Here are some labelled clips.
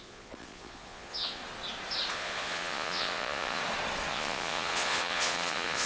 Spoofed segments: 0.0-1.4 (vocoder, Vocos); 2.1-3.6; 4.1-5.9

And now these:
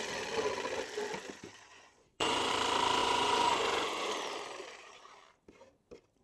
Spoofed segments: 1.7-2.5 (vocoder, Vocos); 3.0-4.1